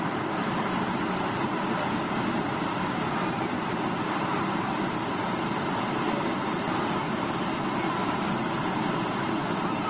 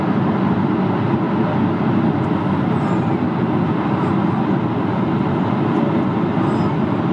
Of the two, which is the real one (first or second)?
second